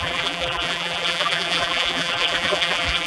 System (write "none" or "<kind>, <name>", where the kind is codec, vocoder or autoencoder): vocoder, BigVGAN v2